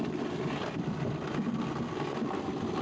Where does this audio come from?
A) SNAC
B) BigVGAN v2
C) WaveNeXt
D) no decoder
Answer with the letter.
D